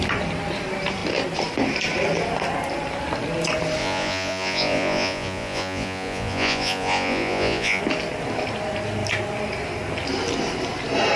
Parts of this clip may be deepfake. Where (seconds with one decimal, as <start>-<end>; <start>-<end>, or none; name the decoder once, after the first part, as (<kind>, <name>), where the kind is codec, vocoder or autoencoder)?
3.8-7.8 (vocoder, Vocos)